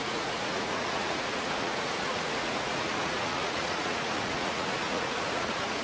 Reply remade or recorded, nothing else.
remade